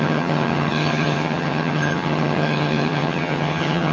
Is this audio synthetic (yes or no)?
yes